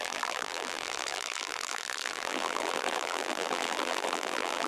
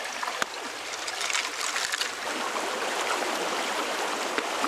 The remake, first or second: first